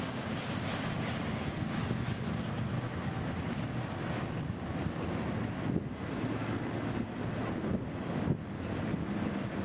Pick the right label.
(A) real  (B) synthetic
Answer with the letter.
A